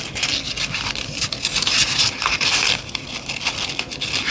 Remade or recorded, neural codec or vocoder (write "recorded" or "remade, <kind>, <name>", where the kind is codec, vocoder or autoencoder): recorded